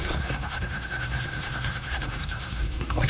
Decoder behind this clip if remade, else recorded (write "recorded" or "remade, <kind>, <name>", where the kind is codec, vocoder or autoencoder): remade, codec, SNAC